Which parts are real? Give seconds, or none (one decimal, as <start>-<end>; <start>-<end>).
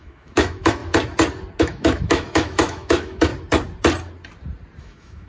0.8-1.6; 3.3-4.8